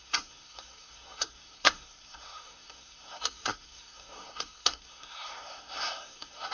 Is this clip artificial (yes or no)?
yes